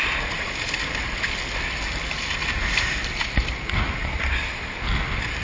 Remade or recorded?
recorded